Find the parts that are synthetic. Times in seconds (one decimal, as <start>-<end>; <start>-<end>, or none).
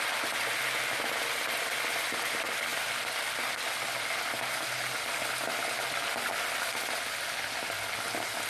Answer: none